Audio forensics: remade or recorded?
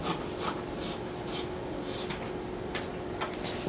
recorded